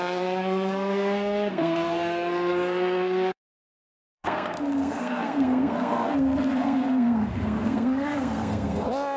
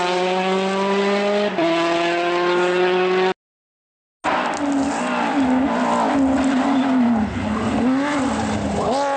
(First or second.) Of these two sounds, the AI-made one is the first